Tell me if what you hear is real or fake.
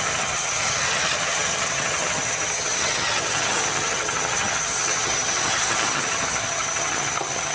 fake